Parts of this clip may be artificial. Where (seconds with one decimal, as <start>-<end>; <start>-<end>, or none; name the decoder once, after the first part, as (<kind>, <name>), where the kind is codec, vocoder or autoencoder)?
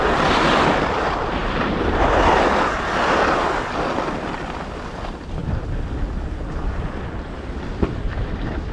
1.4-2.0 (vocoder, BigVGAN v2)